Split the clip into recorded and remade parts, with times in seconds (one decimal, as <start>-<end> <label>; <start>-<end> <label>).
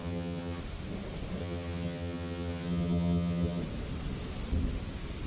0.0-0.6 remade; 0.6-1.4 recorded; 1.4-3.6 remade; 3.6-5.3 recorded